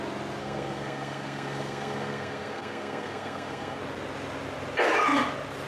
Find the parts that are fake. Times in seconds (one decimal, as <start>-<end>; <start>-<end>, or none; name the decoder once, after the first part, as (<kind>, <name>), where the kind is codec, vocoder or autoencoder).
0.4-3.8 (codec, SNAC)